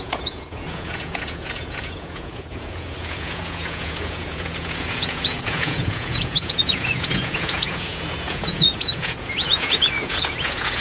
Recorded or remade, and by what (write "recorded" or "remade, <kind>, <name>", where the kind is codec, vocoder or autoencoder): remade, vocoder, Vocos